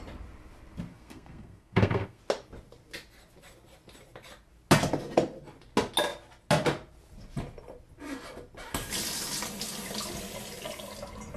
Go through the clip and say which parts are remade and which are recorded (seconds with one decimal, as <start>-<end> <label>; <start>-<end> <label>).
0.0-0.9 recorded; 0.9-2.2 remade; 2.2-11.4 recorded